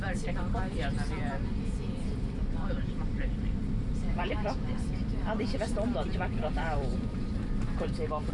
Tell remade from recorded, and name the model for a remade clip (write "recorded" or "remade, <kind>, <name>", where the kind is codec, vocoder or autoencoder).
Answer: remade, vocoder, BigVGAN v2